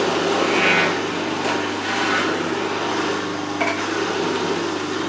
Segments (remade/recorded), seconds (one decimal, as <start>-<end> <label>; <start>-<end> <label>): 0.0-5.1 recorded